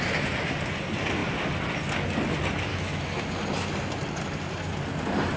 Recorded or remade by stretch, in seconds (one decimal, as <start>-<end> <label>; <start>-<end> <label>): 0.0-2.7 recorded; 2.7-3.3 remade; 3.3-5.4 recorded